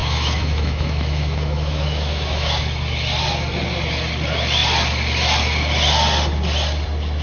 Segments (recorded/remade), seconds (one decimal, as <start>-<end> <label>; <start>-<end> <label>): 0.0-2.6 remade; 2.6-7.2 recorded